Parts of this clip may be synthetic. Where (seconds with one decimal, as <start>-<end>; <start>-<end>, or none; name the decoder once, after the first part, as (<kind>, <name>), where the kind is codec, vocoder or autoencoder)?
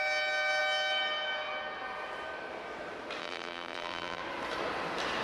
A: 3.2-4.2 (vocoder, BigVGAN v2)